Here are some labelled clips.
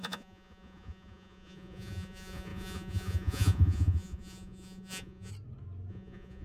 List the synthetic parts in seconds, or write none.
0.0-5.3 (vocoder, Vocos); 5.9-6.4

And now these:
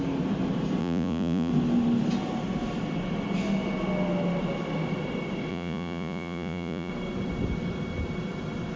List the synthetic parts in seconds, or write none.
0.8-1.5 (vocoder, Vocos); 5.5-6.9